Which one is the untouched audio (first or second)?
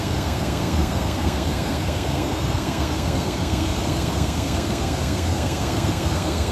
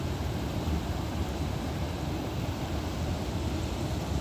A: second